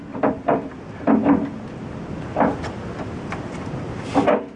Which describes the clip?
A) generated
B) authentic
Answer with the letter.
B